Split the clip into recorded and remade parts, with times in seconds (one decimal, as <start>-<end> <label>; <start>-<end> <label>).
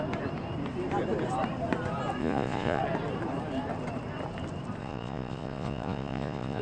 0.0-2.2 recorded; 2.2-2.8 remade; 2.8-4.8 recorded; 4.8-6.6 remade